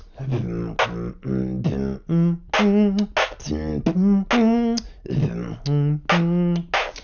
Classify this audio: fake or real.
real